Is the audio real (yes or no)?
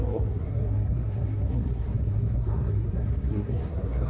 no